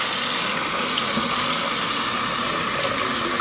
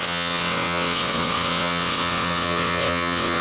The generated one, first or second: second